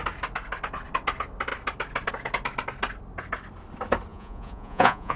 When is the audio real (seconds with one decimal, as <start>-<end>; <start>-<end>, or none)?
0.0-4.1